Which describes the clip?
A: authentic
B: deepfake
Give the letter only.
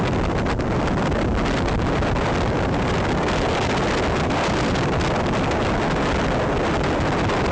A